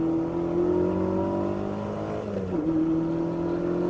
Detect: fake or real real